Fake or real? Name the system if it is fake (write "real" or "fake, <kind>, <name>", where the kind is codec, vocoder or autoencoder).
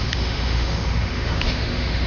fake, autoencoder, DAC-VAE